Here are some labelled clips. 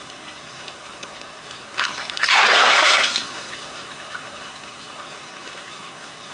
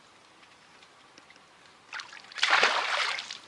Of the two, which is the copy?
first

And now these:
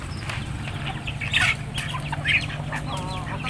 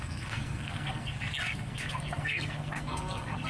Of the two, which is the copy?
second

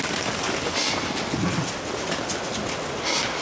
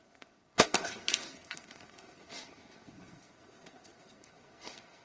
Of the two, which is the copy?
second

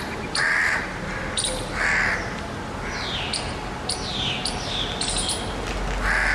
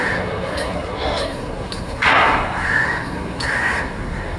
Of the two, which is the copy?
second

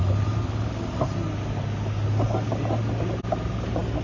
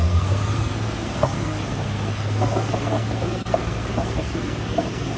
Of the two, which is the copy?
second